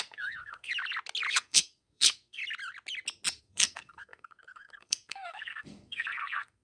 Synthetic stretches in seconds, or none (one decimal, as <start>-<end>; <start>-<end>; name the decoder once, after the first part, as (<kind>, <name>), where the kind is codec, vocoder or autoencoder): 0.0-0.7 (codec, SNAC); 1.3-2.4; 3.4-6.6